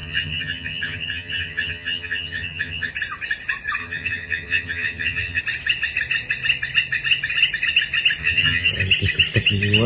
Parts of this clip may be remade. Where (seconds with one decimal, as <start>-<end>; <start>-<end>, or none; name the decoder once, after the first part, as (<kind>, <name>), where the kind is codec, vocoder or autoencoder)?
0.0-2.9 (vocoder, HiFi-GAN); 3.8-5.4; 8.2-8.7